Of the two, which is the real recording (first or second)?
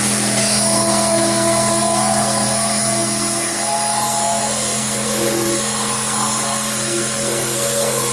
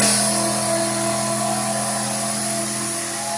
second